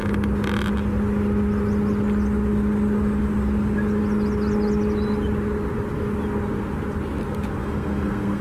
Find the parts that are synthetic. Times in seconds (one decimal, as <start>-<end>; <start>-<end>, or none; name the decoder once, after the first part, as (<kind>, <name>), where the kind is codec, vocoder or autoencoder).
7.6-8.4 (codec, SNAC)